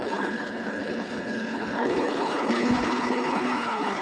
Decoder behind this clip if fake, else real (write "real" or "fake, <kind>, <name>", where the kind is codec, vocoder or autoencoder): fake, codec, HILCodec